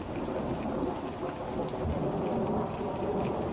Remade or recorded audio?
recorded